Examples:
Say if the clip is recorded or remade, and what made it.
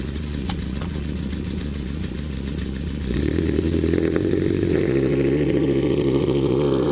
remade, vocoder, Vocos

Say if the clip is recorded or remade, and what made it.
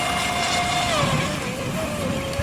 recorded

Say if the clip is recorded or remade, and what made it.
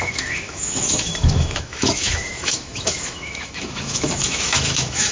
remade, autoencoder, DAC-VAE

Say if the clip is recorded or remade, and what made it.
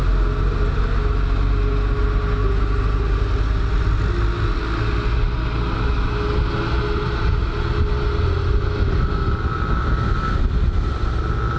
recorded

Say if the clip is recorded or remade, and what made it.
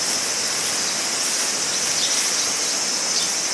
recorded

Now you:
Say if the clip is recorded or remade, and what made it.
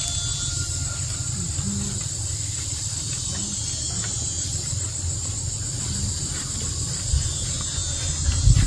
recorded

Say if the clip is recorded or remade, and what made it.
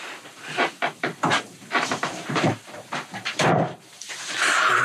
remade, vocoder, BigVGAN v2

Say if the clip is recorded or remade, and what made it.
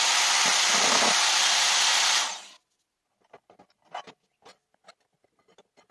recorded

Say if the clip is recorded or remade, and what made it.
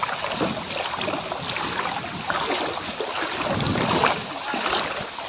recorded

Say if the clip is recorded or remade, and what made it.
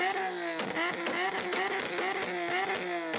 recorded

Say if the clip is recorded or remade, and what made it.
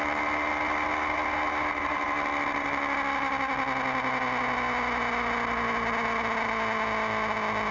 recorded